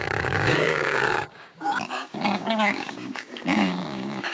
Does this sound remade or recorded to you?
remade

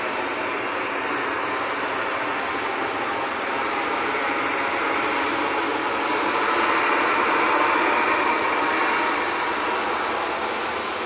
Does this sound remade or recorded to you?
recorded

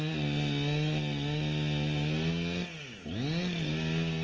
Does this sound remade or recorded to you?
recorded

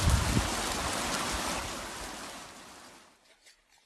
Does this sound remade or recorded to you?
recorded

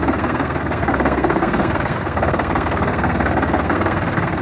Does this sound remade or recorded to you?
remade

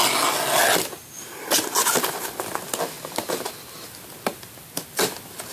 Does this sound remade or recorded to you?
recorded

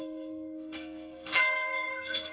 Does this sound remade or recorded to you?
remade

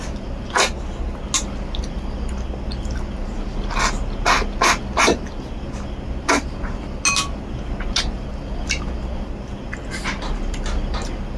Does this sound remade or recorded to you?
recorded